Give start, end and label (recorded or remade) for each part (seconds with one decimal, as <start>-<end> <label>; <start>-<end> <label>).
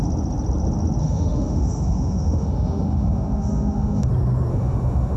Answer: 0.0-1.0 recorded; 1.0-4.1 remade; 4.1-4.5 recorded; 4.5-5.2 remade